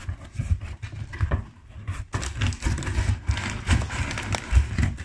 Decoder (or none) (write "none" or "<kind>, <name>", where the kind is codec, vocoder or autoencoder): none